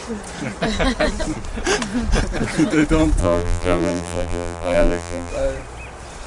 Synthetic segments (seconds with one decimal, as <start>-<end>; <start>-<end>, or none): 3.2-5.3